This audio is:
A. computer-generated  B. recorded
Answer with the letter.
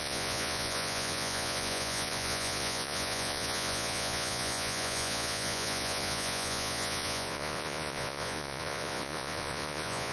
A